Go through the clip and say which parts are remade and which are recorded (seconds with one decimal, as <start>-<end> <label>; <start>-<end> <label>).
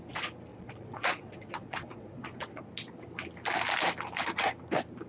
0.0-0.5 recorded; 0.5-2.7 remade; 2.7-5.1 recorded